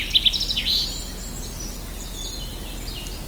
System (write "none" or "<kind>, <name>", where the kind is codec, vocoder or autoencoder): none